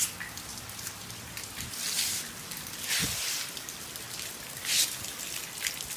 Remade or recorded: recorded